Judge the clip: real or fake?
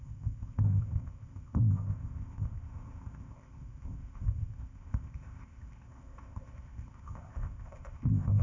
fake